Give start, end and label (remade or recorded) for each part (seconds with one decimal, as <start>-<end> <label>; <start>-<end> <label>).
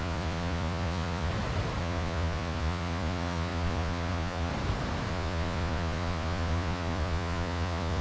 0.0-1.3 remade; 1.3-1.8 recorded; 1.8-4.5 remade; 4.5-5.1 recorded; 5.1-8.0 remade